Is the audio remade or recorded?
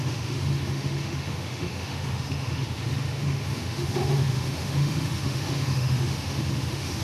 remade